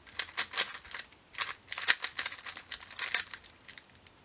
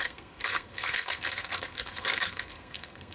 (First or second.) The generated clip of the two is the second